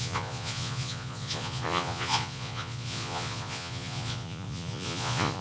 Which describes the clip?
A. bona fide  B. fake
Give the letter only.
B